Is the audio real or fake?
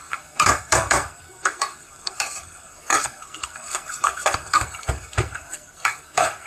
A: fake